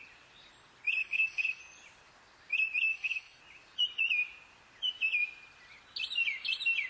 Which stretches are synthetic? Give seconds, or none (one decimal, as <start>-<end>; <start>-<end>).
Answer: 1.0-1.6; 2.9-3.4